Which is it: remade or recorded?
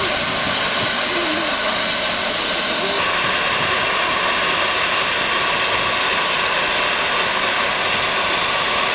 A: recorded